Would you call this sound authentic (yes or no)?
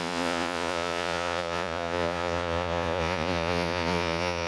no